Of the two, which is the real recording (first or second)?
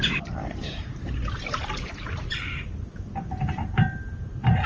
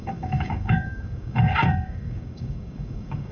first